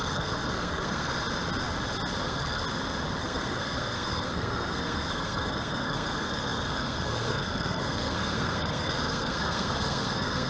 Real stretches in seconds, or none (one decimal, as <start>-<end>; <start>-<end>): 1.1-2.2; 2.6-3.2